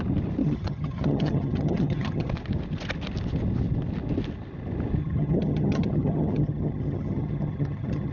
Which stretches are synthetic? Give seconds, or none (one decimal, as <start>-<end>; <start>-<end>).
0.4-2.3; 5.0-8.1

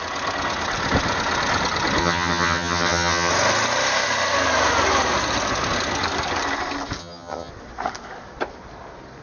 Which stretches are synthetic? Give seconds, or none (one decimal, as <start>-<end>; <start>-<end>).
2.0-3.3; 7.0-7.5

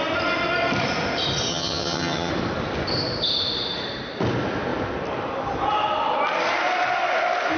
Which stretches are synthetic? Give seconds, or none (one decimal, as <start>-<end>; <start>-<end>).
1.5-2.3

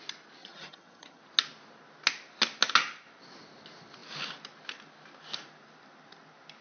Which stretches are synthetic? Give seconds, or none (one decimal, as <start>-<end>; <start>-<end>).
0.4-1.2